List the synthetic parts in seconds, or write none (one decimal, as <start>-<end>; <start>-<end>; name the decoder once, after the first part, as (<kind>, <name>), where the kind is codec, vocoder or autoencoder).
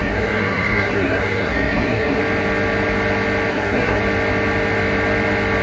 0.0-2.2 (codec, SNAC); 3.5-4.0